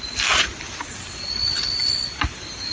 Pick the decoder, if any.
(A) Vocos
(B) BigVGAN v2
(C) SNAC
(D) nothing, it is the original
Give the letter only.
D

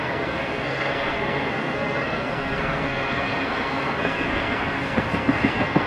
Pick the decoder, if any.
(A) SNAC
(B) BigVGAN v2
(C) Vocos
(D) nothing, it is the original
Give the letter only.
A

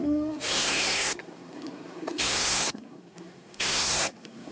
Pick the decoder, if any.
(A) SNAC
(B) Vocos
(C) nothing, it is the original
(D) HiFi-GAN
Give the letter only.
A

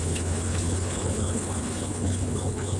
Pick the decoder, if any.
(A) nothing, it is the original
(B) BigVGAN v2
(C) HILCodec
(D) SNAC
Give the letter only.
C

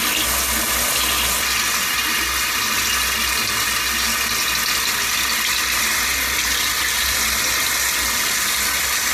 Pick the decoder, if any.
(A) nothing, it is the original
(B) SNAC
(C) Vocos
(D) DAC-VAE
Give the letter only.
A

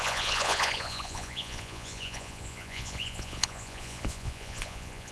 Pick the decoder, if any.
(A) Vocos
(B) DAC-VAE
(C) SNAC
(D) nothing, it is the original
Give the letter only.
A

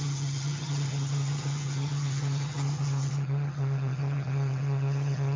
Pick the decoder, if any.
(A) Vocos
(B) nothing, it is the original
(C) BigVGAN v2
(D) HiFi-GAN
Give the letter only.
D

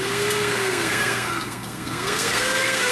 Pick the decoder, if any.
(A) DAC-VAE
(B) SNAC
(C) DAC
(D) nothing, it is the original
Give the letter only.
B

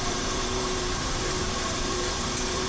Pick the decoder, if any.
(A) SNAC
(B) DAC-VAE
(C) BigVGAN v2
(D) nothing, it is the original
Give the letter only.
C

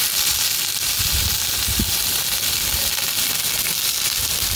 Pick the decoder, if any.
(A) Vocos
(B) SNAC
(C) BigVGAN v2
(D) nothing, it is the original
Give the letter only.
D